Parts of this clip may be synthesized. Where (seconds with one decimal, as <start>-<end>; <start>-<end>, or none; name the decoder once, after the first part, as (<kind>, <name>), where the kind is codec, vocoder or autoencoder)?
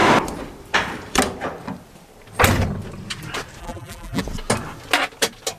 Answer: 3.6-4.2 (vocoder, BigVGAN v2)